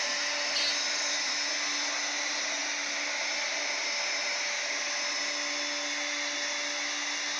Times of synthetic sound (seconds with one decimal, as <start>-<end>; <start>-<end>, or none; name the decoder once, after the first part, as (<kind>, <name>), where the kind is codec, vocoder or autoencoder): none